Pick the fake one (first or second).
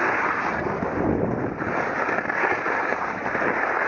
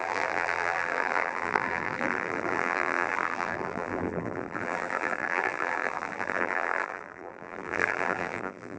second